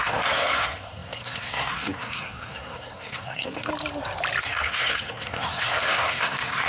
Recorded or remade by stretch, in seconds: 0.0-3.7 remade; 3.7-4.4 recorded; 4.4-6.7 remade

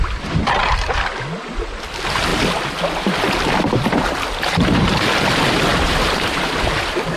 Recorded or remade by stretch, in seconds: 0.0-5.7 recorded; 5.7-6.3 remade; 6.3-7.2 recorded

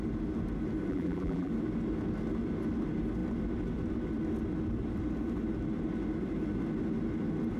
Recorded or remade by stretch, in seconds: 0.0-0.9 recorded; 0.9-1.5 remade; 1.5-7.6 recorded

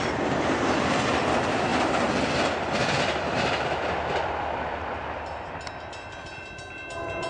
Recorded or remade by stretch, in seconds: 0.0-7.3 recorded

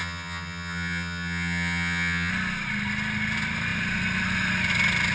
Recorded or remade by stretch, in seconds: 0.0-2.3 remade; 2.3-5.1 recorded